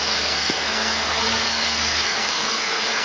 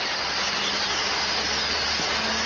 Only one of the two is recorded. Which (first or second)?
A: second